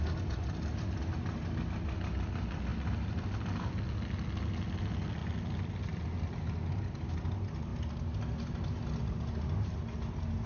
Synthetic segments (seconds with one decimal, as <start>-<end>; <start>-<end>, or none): none